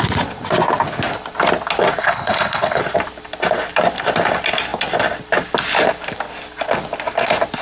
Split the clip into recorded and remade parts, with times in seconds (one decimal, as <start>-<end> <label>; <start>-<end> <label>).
0.0-2.0 recorded; 2.0-2.8 remade; 2.8-7.6 recorded